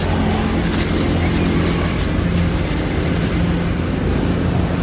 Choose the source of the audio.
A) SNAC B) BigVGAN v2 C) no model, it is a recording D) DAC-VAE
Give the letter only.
C